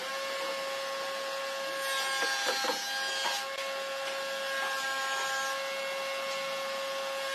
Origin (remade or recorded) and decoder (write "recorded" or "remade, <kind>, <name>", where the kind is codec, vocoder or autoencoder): recorded